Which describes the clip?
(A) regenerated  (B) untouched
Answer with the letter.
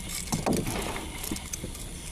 B